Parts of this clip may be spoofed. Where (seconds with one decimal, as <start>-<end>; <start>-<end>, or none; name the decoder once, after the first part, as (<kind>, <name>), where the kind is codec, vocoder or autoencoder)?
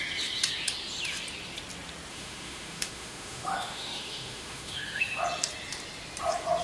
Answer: 2.1-5.2 (autoencoder, DAC-VAE)